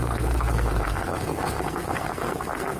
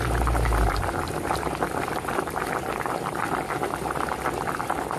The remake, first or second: first